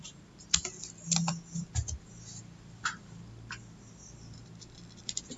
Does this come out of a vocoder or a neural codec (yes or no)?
no